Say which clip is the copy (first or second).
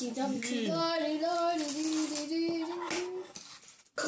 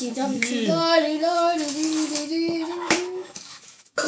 second